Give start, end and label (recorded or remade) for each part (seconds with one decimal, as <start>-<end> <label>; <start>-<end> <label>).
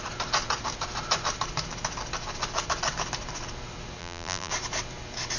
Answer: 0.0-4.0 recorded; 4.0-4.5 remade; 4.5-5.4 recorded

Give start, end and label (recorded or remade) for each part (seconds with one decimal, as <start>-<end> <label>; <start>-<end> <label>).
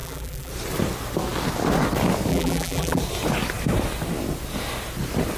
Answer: 0.0-0.5 remade; 0.5-2.3 recorded; 2.3-3.0 remade; 3.0-5.4 recorded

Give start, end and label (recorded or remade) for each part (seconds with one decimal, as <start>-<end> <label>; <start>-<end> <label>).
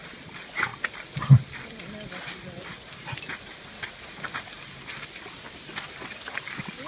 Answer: 0.0-6.9 recorded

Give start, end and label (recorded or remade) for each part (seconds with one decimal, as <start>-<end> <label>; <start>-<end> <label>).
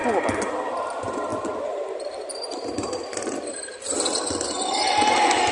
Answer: 0.0-0.5 recorded; 0.5-1.3 remade; 1.3-2.0 recorded; 2.0-5.5 remade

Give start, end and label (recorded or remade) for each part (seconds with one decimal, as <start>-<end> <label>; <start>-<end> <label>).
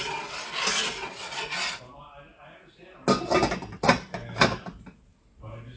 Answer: 0.0-5.8 recorded